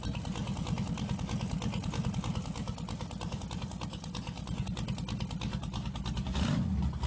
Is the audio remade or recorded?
recorded